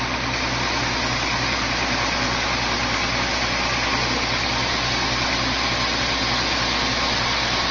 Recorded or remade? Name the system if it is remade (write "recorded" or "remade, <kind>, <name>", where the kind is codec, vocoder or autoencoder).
recorded